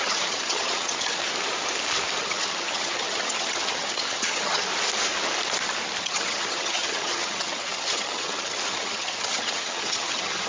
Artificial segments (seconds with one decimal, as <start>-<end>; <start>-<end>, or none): 0.0-1.2; 2.2-4.7; 6.0-10.5